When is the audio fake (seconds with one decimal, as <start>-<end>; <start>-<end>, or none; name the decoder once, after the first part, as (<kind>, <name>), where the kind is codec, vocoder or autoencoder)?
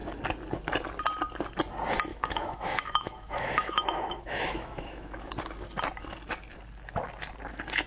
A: 2.1-5.3 (autoencoder, DAC-VAE)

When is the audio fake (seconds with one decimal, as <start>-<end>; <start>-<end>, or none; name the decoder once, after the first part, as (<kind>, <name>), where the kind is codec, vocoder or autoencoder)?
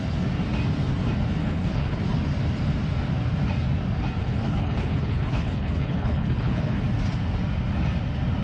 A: 1.4-2.0 (codec, HILCodec); 4.2-6.8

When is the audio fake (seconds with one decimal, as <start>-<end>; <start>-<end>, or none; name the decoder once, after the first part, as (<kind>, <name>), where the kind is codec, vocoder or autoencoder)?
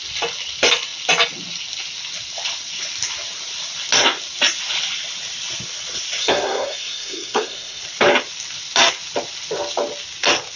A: 6.2-7.8 (codec, SNAC)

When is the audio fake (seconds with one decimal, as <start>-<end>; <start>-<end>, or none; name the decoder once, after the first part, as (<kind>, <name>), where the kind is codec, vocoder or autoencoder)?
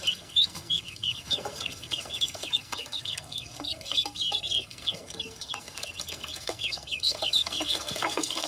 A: 0.0-8.5 (codec, SNAC)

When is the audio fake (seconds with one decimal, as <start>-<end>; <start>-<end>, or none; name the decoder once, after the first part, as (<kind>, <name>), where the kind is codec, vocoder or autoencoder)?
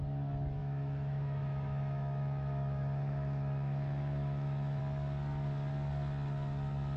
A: 0.6-4.8 (autoencoder, DAC-VAE)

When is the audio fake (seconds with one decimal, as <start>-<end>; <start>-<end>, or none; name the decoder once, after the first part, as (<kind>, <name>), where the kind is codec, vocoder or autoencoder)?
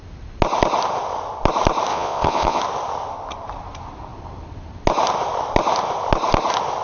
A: 1.9-2.6 (vocoder, Vocos)